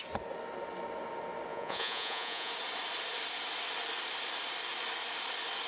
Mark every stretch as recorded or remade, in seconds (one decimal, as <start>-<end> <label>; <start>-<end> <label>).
0.0-1.5 recorded; 1.5-2.5 remade; 2.5-5.7 recorded